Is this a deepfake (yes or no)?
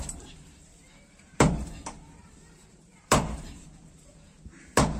yes